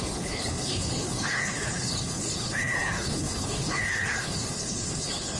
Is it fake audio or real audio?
fake